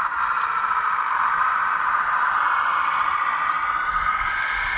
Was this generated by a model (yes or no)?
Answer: no